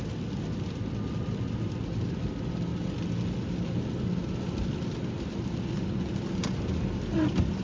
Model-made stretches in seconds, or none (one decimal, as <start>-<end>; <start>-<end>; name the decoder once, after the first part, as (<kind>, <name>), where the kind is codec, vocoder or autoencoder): none